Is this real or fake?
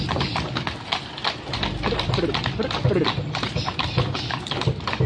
real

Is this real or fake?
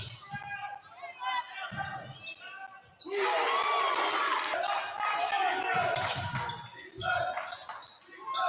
real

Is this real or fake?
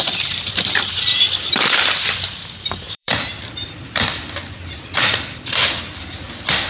fake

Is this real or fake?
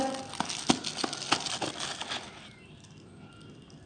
real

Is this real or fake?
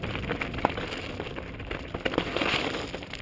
real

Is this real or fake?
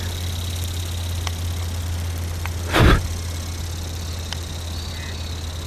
real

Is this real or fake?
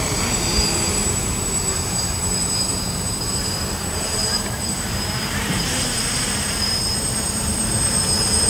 fake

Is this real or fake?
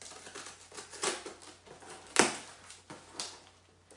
real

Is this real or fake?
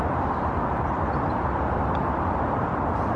real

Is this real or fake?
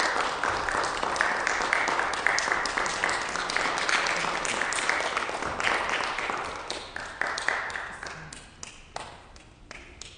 real